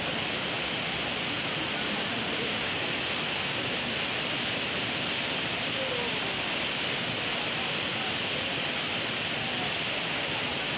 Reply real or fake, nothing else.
real